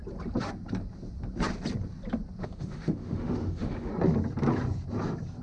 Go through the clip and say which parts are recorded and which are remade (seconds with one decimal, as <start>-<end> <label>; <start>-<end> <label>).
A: 0.0-2.4 recorded; 2.4-3.9 remade; 3.9-5.4 recorded